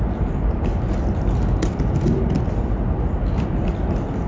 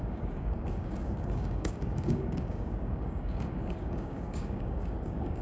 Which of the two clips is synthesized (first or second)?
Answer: second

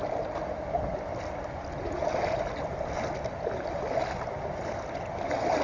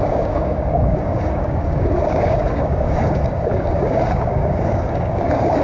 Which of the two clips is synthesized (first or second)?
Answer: second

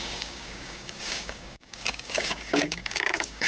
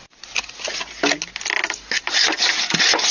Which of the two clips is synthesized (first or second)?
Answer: first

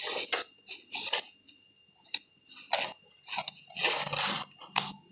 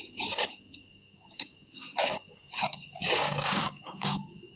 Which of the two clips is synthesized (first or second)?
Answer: second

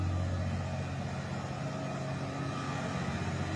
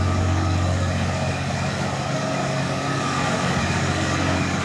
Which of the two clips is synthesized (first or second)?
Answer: second